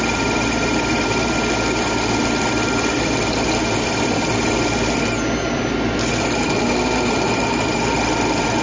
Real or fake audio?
real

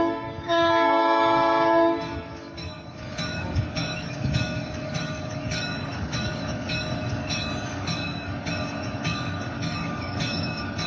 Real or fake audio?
fake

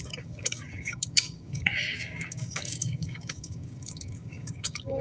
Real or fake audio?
fake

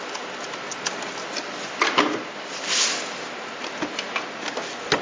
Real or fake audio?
real